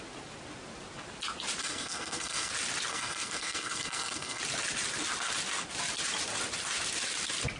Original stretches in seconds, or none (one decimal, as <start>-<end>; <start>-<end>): 0.0-1.6; 2.5-2.9; 4.4-7.6